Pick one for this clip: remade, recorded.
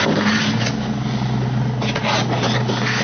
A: recorded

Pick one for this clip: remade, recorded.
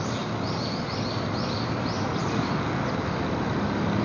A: recorded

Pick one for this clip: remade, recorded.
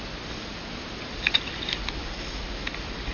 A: recorded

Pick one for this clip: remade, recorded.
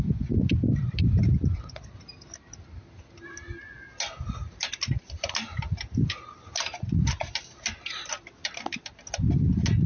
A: recorded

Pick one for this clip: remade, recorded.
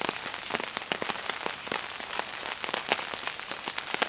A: recorded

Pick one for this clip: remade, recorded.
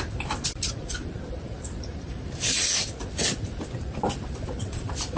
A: recorded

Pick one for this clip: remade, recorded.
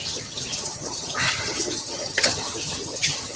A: remade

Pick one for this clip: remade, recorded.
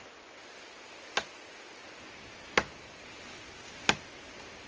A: recorded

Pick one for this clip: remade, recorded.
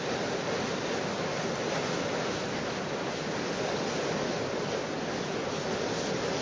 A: recorded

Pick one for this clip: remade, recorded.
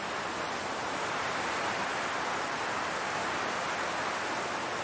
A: recorded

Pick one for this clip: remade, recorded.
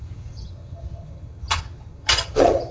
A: remade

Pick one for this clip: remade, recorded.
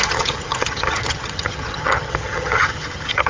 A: remade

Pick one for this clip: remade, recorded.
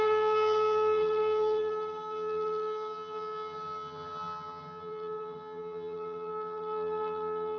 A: remade